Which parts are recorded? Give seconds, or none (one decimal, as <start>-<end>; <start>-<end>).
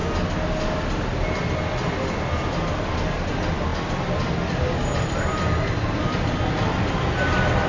0.0-7.7